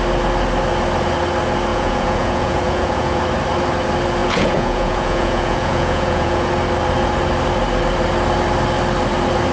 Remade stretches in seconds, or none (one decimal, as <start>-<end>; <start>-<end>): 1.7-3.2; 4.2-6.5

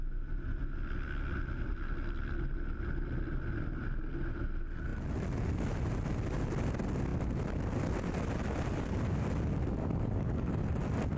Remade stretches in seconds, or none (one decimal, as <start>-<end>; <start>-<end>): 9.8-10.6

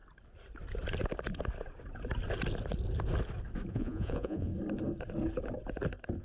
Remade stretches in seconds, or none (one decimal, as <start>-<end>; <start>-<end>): 3.7-4.5

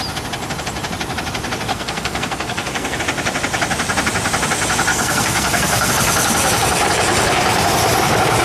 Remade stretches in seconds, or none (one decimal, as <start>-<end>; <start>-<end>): 1.7-3.0; 4.9-5.9